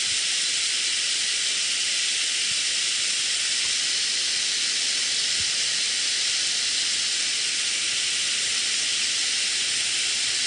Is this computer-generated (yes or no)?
no